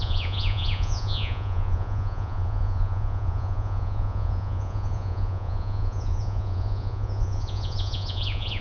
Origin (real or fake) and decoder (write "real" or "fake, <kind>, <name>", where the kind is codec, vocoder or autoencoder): fake, vocoder, Vocos